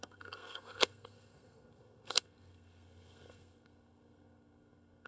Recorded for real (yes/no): no